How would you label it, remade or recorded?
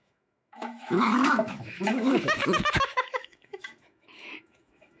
remade